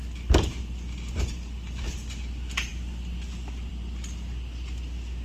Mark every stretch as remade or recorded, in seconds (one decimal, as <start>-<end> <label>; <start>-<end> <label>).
0.0-5.2 recorded